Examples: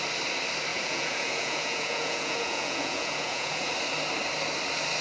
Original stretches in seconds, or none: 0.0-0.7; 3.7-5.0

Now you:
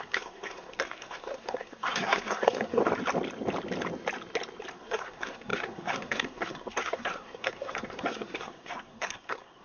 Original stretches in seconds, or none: 2.8-4.7

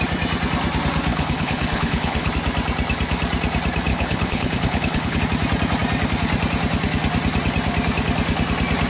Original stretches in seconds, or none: 0.0-1.1; 2.3-3.9; 5.2-8.9